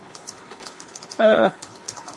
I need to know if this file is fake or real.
fake